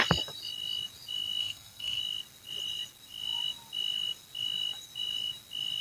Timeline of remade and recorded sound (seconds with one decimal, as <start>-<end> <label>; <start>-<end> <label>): 0.0-1.4 recorded; 1.4-2.0 remade; 2.0-5.8 recorded